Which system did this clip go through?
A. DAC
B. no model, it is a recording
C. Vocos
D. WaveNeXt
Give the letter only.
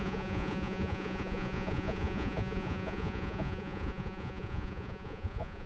C